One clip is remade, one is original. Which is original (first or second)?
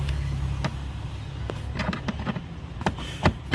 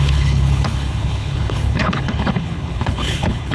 first